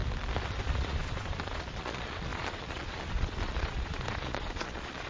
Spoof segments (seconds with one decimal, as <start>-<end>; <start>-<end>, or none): 0.6-5.1